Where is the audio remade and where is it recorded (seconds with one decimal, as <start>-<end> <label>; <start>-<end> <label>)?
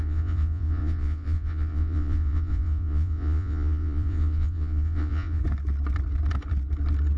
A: 0.0-5.4 remade; 5.4-7.2 recorded